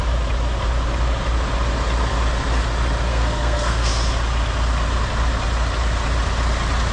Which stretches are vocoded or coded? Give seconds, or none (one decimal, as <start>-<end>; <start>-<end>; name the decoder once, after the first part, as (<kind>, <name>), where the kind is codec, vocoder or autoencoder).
3.1-3.9 (codec, SNAC)